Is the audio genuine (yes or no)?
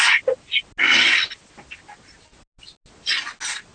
yes